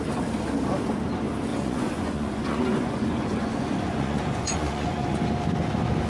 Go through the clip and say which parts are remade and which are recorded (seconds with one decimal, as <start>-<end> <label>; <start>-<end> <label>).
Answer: 0.0-1.5 recorded; 1.5-5.2 remade; 5.2-6.1 recorded